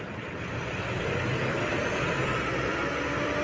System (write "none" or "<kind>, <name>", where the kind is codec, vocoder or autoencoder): none